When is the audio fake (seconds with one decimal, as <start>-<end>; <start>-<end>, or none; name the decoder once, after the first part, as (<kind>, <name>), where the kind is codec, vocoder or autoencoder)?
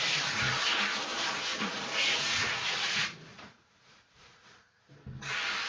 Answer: 1.5-4.9 (vocoder, Vocos)